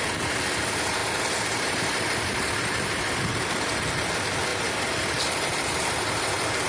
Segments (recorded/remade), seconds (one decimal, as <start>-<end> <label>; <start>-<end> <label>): 0.0-4.5 remade; 4.5-5.2 recorded; 5.2-6.7 remade